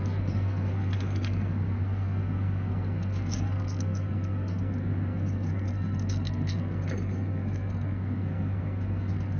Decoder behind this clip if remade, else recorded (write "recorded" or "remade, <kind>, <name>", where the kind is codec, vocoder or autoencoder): remade, codec, SNAC